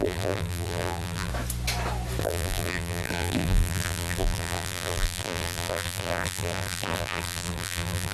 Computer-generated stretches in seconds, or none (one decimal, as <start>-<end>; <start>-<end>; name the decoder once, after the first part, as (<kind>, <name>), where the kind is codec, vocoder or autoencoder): 0.0-1.3 (vocoder, BigVGAN v2); 2.2-8.1